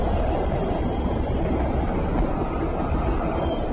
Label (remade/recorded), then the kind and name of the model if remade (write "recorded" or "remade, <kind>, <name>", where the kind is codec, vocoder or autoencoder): recorded